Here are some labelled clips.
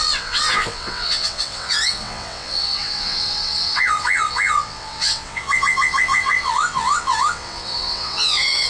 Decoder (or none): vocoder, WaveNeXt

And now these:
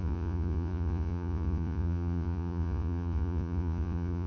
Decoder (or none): vocoder, Vocos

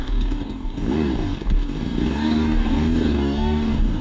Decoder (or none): codec, DAC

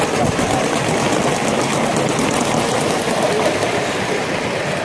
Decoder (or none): none